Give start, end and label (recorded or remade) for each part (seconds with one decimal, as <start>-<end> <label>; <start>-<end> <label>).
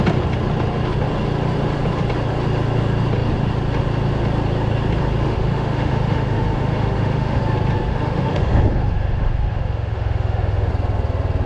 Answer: 0.0-5.2 recorded; 5.2-7.4 remade; 7.4-7.9 recorded; 7.9-10.7 remade; 10.7-11.5 recorded